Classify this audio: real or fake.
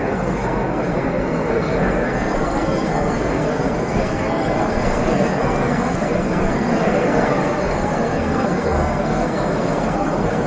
fake